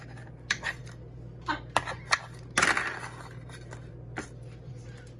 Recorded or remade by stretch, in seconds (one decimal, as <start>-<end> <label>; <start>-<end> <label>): 0.0-5.2 recorded